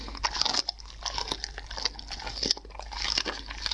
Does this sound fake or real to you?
real